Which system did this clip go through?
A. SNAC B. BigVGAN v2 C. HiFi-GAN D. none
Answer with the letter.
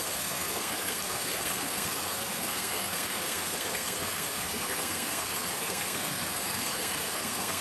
A